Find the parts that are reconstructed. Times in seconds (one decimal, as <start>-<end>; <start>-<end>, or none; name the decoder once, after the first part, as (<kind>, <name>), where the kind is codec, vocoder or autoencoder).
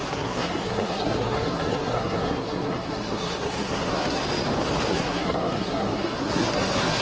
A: 0.0-4.2 (codec, SNAC); 4.9-7.0